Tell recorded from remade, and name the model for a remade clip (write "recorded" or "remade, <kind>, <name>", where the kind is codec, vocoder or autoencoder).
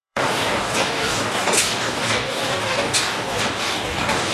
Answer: remade, codec, DAC